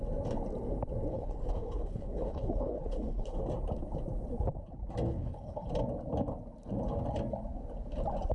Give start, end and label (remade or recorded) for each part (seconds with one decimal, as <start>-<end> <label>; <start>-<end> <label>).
0.0-1.1 recorded; 1.1-3.4 remade; 3.4-5.1 recorded; 5.1-5.7 remade; 5.7-8.3 recorded